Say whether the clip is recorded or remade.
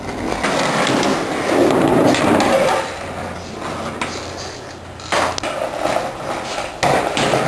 recorded